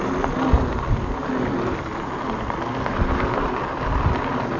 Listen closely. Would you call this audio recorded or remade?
recorded